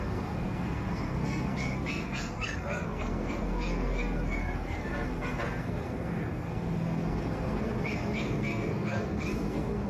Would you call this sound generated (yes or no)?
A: yes